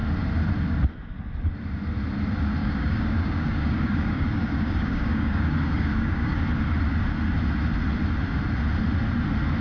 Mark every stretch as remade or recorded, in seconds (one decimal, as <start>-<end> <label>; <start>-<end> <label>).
0.0-2.6 recorded; 2.6-6.4 remade; 6.4-9.6 recorded

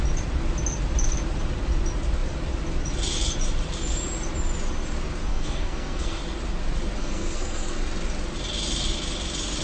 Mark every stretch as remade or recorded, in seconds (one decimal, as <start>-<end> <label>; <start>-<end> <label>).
0.0-5.3 recorded; 5.3-6.2 remade; 6.2-7.0 recorded; 7.0-7.8 remade; 7.8-9.6 recorded

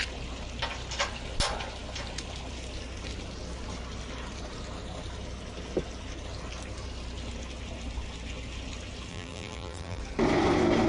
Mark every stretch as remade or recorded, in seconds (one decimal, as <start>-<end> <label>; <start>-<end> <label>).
0.0-9.1 recorded; 9.1-10.0 remade; 10.0-10.9 recorded